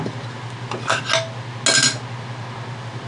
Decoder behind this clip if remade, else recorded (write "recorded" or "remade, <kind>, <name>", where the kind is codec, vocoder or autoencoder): recorded